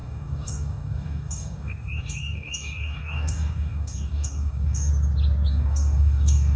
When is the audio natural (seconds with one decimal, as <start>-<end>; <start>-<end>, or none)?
4.9-5.5